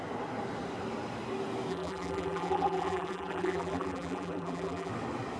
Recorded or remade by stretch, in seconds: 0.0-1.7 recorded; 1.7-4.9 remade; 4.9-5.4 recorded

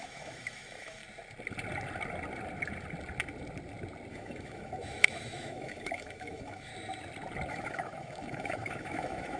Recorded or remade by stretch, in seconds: 0.0-1.0 remade; 1.0-4.1 recorded; 4.1-6.7 remade; 6.7-7.5 recorded; 7.5-9.4 remade

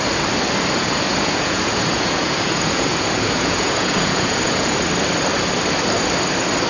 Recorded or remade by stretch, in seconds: 0.0-0.8 recorded; 0.8-4.7 remade; 4.7-6.7 recorded

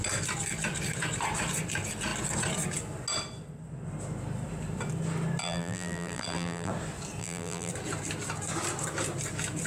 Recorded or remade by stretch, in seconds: 0.0-5.4 recorded; 5.4-6.7 remade; 6.7-7.2 recorded; 7.2-7.7 remade; 7.7-9.7 recorded

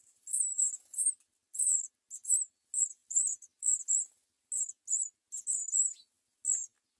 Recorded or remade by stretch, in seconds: 0.0-7.0 recorded